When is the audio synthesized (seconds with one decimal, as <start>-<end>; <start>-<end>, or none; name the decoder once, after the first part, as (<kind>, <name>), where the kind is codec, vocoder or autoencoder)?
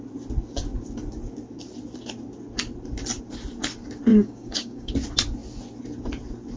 4.1-4.9 (codec, DAC)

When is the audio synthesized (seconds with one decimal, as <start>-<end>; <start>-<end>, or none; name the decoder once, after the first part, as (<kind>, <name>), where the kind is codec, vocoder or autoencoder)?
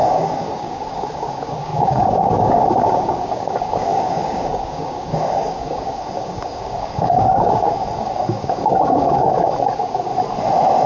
0.0-10.1 (codec, DAC)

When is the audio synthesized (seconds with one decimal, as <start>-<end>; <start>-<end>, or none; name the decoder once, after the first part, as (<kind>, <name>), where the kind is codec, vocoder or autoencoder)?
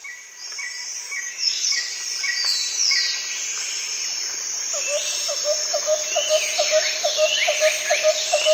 1.0-1.9 (codec, DAC)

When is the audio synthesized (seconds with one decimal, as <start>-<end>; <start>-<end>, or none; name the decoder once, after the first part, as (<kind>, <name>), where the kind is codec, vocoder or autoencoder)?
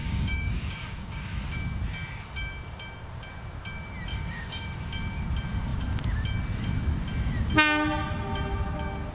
0.0-1.4 (codec, DAC); 4.1-4.8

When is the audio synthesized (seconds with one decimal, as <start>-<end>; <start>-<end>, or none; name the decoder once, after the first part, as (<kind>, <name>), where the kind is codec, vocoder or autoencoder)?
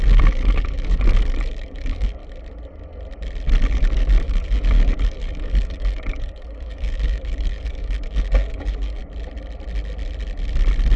0.0-2.2 (codec, DAC); 3.6-9.0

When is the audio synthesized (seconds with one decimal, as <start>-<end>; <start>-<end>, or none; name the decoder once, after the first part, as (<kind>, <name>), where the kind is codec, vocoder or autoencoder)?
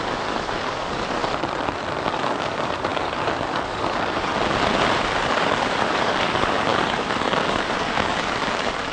0.0-1.2 (codec, DAC); 2.1-4.3; 5.3-8.9